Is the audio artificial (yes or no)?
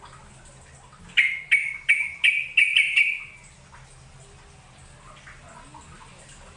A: no